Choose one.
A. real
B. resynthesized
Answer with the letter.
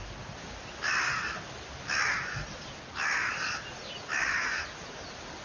A